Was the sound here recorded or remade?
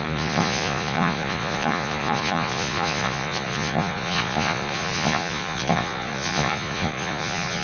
remade